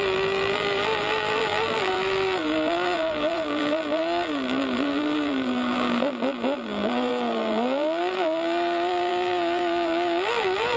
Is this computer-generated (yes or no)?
yes